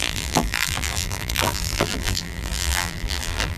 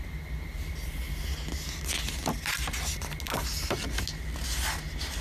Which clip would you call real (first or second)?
second